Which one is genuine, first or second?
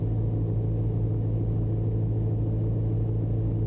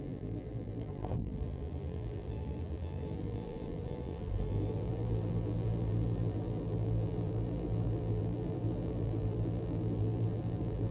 first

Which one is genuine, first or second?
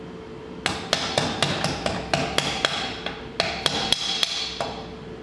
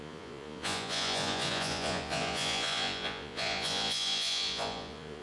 first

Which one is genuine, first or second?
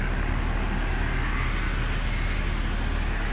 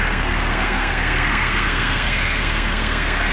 first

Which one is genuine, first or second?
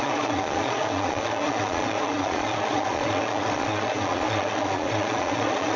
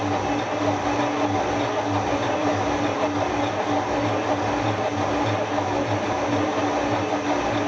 second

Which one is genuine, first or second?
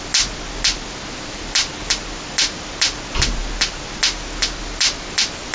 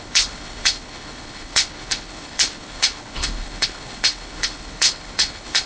first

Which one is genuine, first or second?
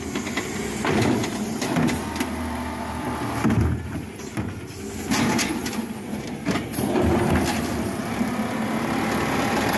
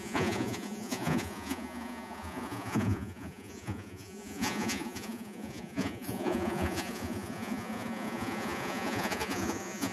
first